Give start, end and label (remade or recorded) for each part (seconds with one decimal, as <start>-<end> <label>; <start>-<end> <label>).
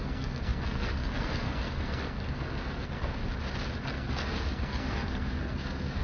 0.0-3.2 remade; 3.2-3.8 recorded; 3.8-6.0 remade